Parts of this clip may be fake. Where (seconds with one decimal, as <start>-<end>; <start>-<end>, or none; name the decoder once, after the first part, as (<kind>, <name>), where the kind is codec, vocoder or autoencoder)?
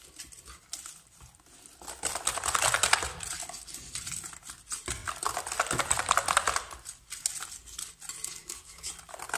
8.4-8.9 (codec, DAC)